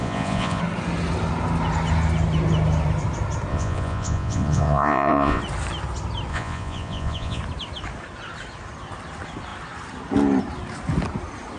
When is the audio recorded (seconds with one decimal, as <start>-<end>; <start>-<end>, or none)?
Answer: 0.6-3.5; 5.4-6.3; 7.4-11.6